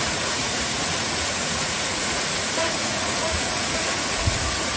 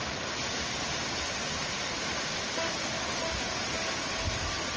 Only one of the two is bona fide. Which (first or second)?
second